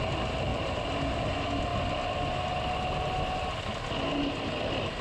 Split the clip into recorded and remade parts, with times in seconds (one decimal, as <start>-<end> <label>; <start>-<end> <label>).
0.0-0.5 recorded; 0.5-1.0 remade; 1.0-5.0 recorded